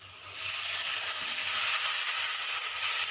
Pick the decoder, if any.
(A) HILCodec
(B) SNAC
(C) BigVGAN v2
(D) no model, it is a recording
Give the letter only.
D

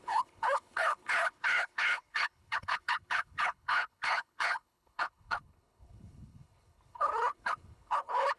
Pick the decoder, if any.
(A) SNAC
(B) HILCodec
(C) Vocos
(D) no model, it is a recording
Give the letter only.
B